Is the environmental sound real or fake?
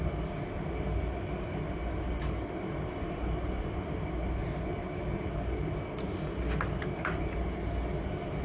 real